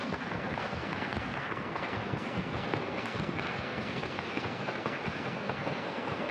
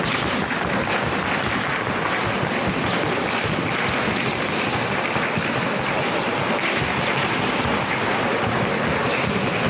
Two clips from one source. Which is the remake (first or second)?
first